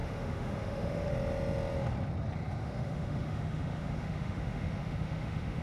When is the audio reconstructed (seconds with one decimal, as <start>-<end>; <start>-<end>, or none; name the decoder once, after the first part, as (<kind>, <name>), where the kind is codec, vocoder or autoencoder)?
0.0-1.1 (autoencoder, DAC-VAE); 2.6-5.6

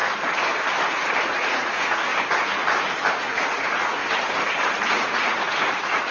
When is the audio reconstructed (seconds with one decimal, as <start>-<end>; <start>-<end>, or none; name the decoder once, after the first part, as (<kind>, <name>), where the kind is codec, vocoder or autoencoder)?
1.2-2.1 (vocoder, Vocos); 3.1-4.0; 4.9-6.1